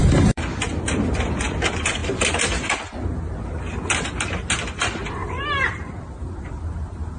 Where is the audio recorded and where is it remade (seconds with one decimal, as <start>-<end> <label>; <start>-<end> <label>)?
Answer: 0.0-0.6 remade; 0.6-5.2 recorded; 5.2-6.4 remade; 6.4-7.2 recorded